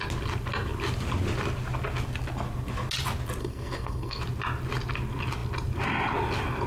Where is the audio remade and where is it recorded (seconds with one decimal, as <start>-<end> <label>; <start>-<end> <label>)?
0.0-3.4 recorded; 3.4-4.2 remade; 4.2-6.7 recorded